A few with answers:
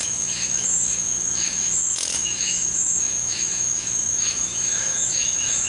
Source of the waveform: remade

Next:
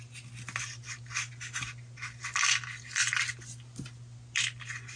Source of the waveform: recorded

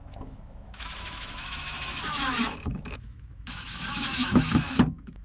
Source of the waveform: remade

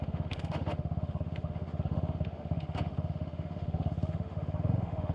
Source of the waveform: remade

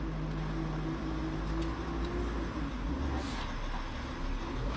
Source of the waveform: recorded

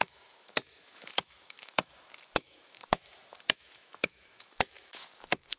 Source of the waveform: remade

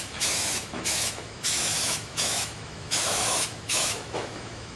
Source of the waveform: remade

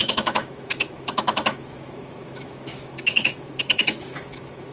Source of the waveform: remade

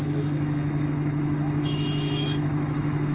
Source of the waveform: remade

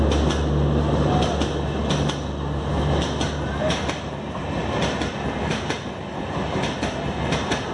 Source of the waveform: recorded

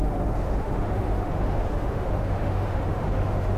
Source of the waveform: remade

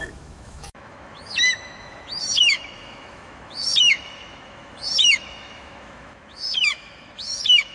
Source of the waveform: remade